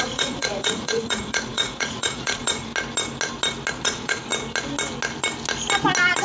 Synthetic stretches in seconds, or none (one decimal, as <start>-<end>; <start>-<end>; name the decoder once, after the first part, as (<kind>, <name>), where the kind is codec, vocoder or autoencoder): 0.0-2.7 (vocoder, Vocos); 3.7-4.3